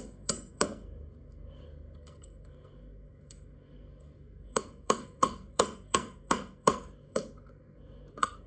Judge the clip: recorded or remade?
remade